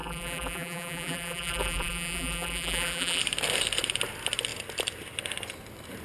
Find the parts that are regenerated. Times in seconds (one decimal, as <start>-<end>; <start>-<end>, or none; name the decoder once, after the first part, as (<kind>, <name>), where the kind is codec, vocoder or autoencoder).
0.0-3.2 (vocoder, BigVGAN v2)